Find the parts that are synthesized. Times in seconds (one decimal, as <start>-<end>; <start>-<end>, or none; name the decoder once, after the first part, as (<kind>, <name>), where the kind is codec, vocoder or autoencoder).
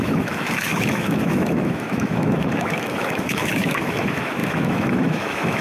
0.0-5.6 (autoencoder, DAC-VAE)